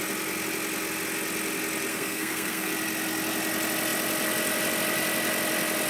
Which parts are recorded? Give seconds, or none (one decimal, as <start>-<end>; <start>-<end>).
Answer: 0.0-1.9; 2.7-5.9